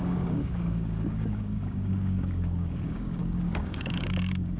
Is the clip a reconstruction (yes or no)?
yes